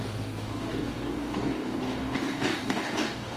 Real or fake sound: fake